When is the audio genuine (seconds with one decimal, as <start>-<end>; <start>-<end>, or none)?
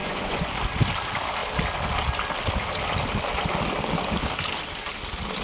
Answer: 0.5-5.4